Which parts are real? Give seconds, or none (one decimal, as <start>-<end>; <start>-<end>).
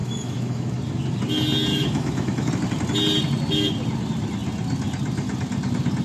0.8-1.7; 2.5-6.0